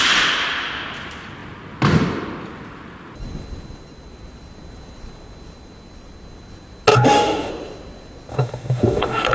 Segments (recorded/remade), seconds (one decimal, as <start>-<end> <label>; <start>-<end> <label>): 0.0-6.9 recorded; 6.9-7.5 remade; 7.5-8.3 recorded; 8.3-9.3 remade